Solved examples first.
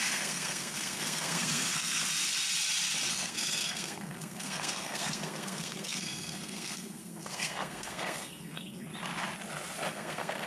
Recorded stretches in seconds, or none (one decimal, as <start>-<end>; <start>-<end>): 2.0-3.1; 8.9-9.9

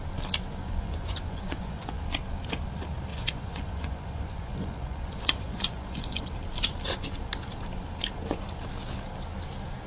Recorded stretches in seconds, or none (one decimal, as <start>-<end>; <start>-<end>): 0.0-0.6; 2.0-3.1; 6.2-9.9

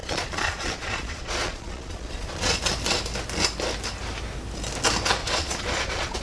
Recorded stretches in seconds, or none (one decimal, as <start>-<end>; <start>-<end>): 2.6-5.2